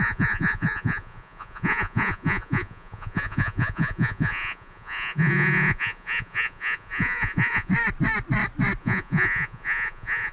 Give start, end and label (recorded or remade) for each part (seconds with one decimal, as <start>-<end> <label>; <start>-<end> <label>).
0.0-7.7 remade; 7.7-8.8 recorded; 8.8-10.3 remade